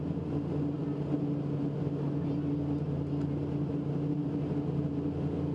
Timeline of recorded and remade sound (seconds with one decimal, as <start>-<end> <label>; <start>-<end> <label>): 0.0-5.5 recorded